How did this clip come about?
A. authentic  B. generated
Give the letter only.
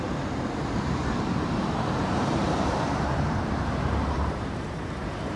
B